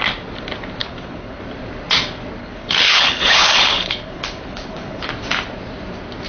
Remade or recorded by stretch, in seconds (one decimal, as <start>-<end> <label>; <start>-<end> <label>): 0.0-0.8 recorded; 0.8-1.4 remade; 1.4-2.4 recorded; 2.4-5.1 remade; 5.1-6.3 recorded